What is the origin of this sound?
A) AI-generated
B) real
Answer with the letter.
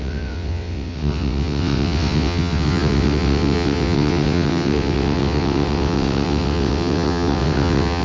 A